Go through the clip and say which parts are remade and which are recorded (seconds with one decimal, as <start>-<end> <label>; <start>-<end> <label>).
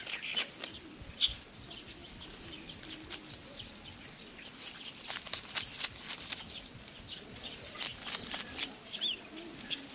0.0-9.9 recorded